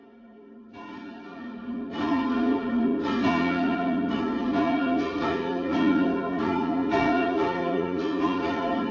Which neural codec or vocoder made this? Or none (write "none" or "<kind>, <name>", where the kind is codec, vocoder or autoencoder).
vocoder, Vocos